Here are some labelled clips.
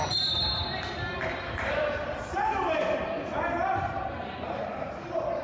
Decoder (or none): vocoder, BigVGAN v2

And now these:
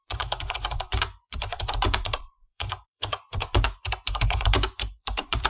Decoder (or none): vocoder, Vocos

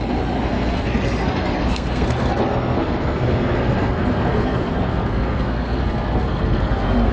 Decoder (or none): codec, SNAC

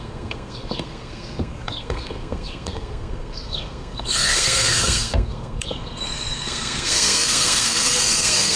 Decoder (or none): codec, SNAC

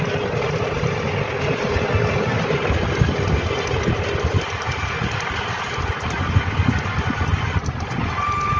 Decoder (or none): none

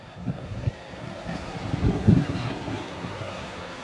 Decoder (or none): codec, SNAC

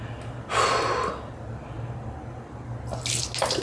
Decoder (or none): none